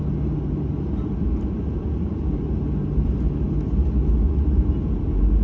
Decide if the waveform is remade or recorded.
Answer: recorded